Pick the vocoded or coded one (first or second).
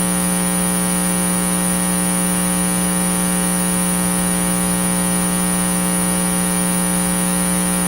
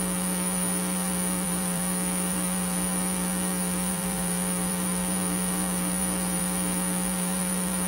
second